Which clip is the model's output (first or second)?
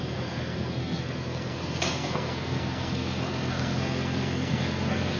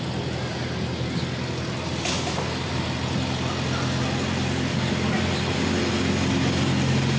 first